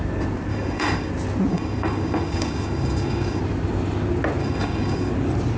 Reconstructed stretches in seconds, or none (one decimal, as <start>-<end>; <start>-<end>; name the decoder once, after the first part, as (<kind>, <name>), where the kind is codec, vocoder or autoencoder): 0.5-1.1 (codec, DAC); 1.5-3.4; 4.4-5.1